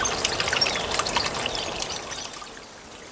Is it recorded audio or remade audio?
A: recorded